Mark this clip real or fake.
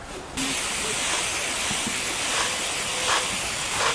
real